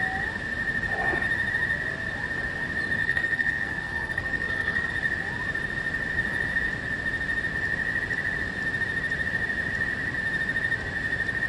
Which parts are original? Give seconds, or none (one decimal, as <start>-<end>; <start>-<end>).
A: 0.0-3.0; 4.9-11.5